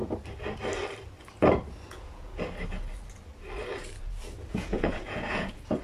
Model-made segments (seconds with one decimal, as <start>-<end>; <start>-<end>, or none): 1.9-2.3; 4.5-5.8